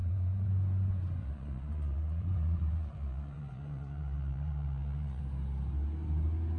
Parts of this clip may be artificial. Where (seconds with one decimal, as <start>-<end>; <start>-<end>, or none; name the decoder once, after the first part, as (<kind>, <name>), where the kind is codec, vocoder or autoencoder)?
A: 0.0-0.5 (vocoder, Vocos); 1.2-5.2